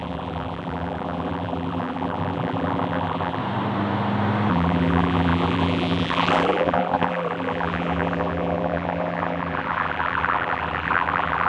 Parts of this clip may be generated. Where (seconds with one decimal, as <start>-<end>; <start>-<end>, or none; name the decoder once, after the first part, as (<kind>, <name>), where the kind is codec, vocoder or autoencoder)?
0.0-3.4 (vocoder, BigVGAN v2); 4.5-11.5